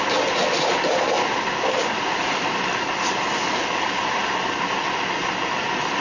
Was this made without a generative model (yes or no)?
yes